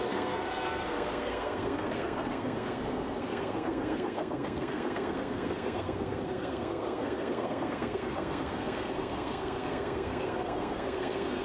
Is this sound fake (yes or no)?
yes